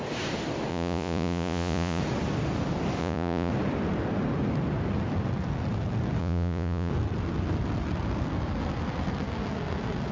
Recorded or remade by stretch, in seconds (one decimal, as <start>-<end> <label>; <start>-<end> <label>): 0.0-0.7 recorded; 0.7-2.0 remade; 2.0-3.0 recorded; 3.0-3.5 remade; 3.5-6.2 recorded; 6.2-6.9 remade; 6.9-10.1 recorded